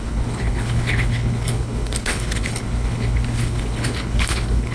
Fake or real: fake